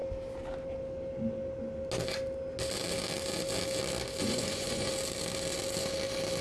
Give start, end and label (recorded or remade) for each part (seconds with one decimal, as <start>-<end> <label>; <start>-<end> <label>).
0.0-4.2 recorded; 4.2-4.9 remade; 4.9-6.4 recorded